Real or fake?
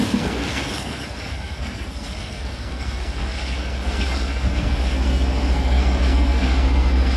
fake